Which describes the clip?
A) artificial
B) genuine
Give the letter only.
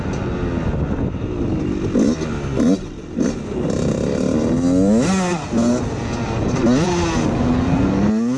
B